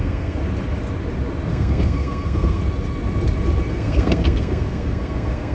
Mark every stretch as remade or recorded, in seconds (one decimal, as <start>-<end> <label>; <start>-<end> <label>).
0.0-0.4 remade; 0.4-1.5 recorded; 1.5-2.6 remade; 2.6-3.7 recorded; 3.7-5.5 remade